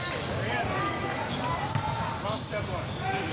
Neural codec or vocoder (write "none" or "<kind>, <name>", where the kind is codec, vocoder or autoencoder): none